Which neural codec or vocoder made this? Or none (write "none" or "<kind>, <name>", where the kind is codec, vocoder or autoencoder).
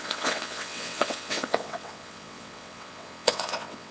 vocoder, WaveNeXt